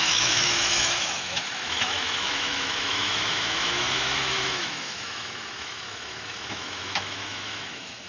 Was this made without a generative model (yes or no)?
no